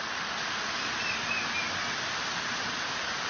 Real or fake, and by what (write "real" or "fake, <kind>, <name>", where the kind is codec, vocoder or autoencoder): real